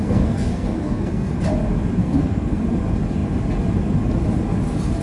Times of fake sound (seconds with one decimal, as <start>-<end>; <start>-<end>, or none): 0.0-1.4; 2.0-2.6